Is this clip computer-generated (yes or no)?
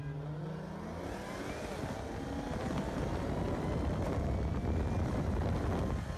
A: no